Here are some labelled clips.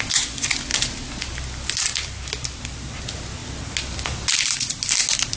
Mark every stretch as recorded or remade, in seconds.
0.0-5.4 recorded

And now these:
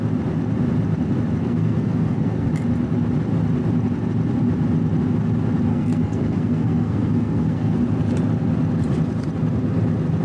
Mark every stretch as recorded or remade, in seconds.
0.0-1.4 recorded; 1.4-2.5 remade; 2.5-5.7 recorded; 5.7-7.8 remade; 7.8-10.2 recorded

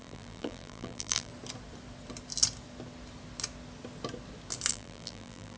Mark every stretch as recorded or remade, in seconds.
0.0-1.3 remade; 1.3-4.7 recorded; 4.7-5.6 remade

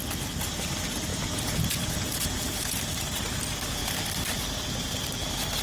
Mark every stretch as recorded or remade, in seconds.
0.0-1.1 recorded; 1.1-2.8 remade; 2.8-5.6 recorded

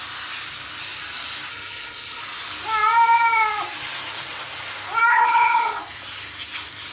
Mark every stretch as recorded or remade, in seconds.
0.0-1.5 recorded; 1.5-2.2 remade; 2.2-5.1 recorded; 5.1-5.8 remade; 5.8-6.9 recorded

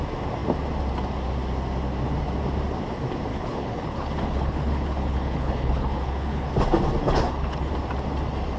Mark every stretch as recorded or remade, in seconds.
0.0-3.3 recorded; 3.3-6.5 remade; 6.5-7.0 recorded; 7.0-7.7 remade; 7.7-8.6 recorded

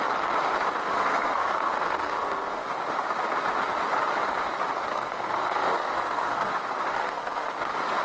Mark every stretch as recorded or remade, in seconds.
0.0-0.7 recorded; 0.7-2.7 remade; 2.7-4.9 recorded; 4.9-6.5 remade; 6.5-7.0 recorded; 7.0-7.5 remade; 7.5-8.0 recorded

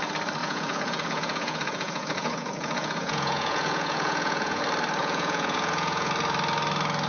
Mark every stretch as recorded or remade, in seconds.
0.0-0.4 recorded; 0.4-4.6 remade; 4.6-5.0 recorded; 5.0-6.1 remade; 6.1-7.1 recorded